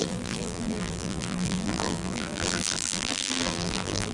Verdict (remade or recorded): remade